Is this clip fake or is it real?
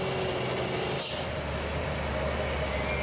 real